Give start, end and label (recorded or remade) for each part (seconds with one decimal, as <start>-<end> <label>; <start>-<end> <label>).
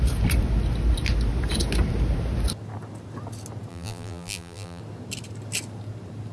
0.0-3.7 recorded; 3.7-4.8 remade; 4.8-6.3 recorded